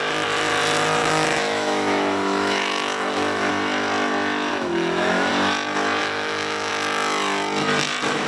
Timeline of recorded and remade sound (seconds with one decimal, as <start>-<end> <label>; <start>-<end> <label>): 0.0-1.0 recorded; 1.0-3.5 remade; 3.5-4.5 recorded; 4.5-5.3 remade; 5.3-6.0 recorded; 6.0-6.7 remade; 6.7-8.3 recorded